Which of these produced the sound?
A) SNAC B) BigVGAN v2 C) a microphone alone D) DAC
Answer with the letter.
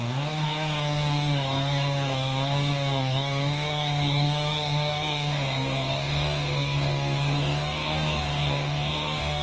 D